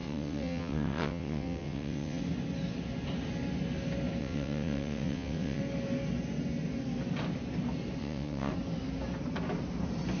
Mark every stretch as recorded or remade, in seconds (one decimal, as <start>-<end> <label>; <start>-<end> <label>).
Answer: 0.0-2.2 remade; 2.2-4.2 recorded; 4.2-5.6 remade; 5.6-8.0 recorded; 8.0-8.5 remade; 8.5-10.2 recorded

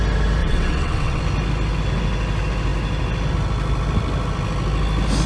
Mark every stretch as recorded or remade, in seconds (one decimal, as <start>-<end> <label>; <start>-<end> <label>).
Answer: 0.0-0.4 recorded; 0.4-1.2 remade; 1.2-5.3 recorded

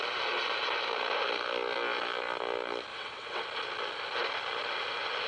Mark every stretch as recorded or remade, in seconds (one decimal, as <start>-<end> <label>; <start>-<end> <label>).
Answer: 0.0-2.9 recorded; 2.9-3.4 remade; 3.4-5.3 recorded